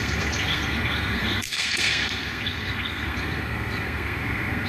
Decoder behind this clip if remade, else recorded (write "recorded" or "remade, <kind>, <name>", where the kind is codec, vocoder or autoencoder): remade, codec, SNAC